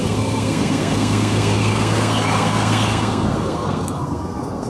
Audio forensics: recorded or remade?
remade